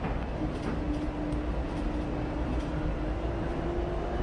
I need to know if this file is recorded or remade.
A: recorded